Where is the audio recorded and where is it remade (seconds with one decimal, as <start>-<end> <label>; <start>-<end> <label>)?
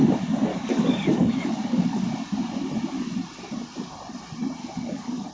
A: 0.0-0.5 recorded; 0.5-2.0 remade; 2.0-4.6 recorded; 4.6-5.3 remade